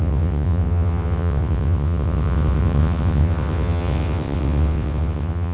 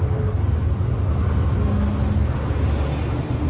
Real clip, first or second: second